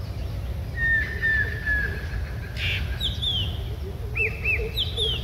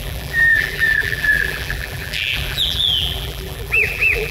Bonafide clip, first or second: first